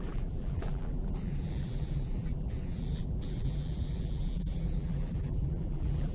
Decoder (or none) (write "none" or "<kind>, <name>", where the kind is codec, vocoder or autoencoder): vocoder, BigVGAN v2